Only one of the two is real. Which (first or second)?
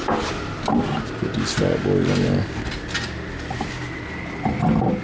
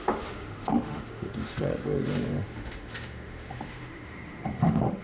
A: first